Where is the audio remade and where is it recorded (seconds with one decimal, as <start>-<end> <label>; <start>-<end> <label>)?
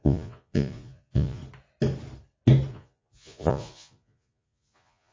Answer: 0.0-1.4 remade; 1.4-2.7 recorded; 2.7-5.1 remade